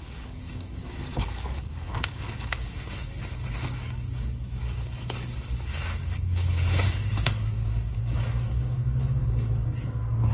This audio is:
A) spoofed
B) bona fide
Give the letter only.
A